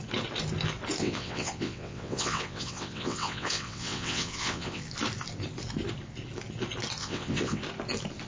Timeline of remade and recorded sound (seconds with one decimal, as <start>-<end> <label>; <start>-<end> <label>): 0.0-1.0 recorded; 1.0-4.8 remade; 4.8-7.0 recorded; 7.0-7.6 remade; 7.6-8.3 recorded